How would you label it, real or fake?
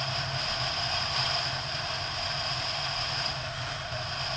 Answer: real